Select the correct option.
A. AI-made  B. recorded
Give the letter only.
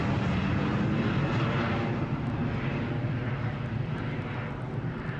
B